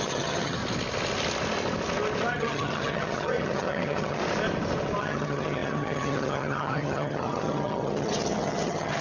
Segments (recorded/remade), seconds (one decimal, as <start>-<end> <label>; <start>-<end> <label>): 0.0-0.6 remade; 0.6-2.3 recorded; 2.3-4.2 remade; 4.2-5.0 recorded; 5.0-9.0 remade